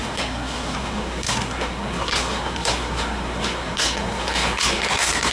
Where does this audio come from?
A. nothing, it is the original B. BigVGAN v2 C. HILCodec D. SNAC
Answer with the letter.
D